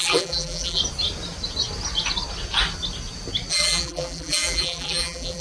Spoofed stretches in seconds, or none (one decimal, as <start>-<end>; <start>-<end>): 0.0-0.8; 3.5-5.4